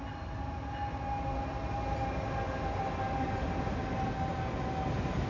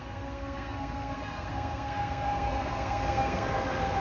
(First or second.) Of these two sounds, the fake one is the second